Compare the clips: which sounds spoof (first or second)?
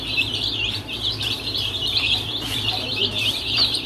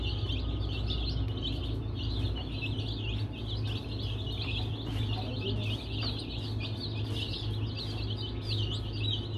first